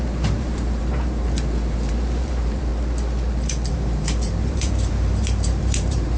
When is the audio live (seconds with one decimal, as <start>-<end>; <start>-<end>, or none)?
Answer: 2.7-3.7